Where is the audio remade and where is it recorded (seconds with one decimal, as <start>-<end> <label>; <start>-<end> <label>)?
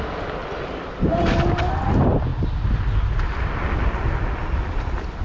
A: 0.0-0.4 recorded; 0.4-0.9 remade; 0.9-5.2 recorded